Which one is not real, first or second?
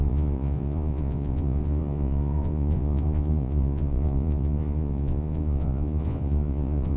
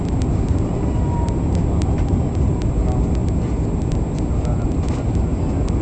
first